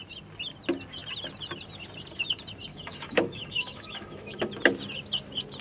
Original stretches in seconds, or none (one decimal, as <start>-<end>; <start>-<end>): 0.0-2.7; 4.4-5.6